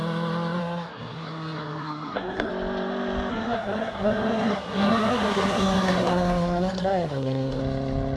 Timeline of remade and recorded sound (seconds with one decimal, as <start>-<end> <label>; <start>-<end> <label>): 0.0-0.6 recorded; 0.6-2.5 remade; 2.5-3.3 recorded; 3.3-7.6 remade; 7.6-8.2 recorded